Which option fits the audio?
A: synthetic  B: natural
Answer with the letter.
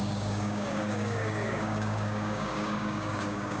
A